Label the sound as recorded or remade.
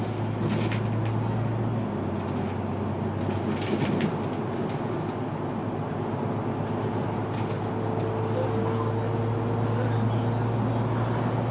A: recorded